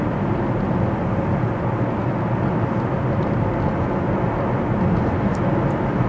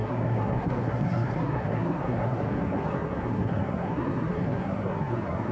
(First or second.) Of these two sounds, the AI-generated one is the second